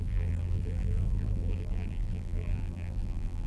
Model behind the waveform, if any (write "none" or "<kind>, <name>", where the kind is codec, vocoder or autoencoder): vocoder, BigVGAN v2